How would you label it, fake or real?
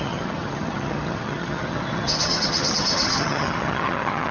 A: fake